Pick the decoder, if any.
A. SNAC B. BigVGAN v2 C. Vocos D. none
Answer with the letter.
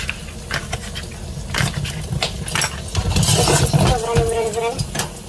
D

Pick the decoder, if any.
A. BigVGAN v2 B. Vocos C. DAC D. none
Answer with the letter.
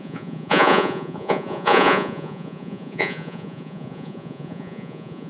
B